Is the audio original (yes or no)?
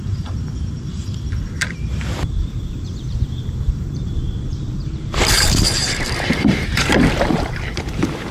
no